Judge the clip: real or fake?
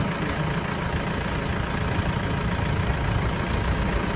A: real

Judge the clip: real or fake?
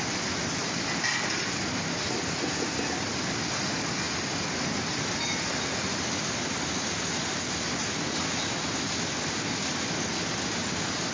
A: real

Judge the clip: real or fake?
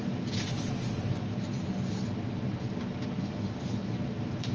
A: real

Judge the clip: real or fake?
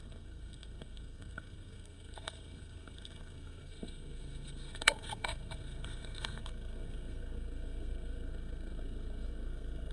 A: fake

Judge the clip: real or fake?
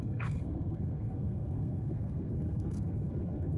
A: fake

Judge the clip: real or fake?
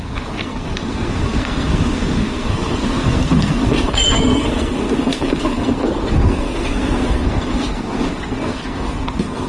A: fake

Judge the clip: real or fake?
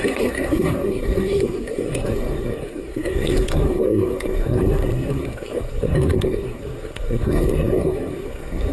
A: fake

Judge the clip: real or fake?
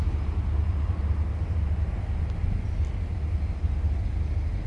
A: real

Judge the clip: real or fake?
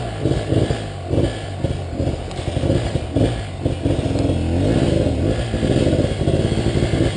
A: real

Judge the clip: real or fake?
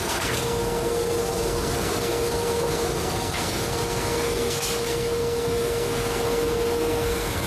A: fake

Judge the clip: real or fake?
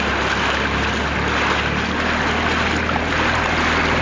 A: real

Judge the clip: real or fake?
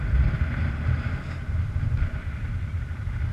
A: real